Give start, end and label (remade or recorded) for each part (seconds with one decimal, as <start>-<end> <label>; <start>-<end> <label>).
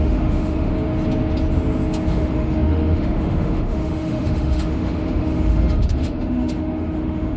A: 0.0-0.7 remade; 0.7-2.1 recorded; 2.1-7.4 remade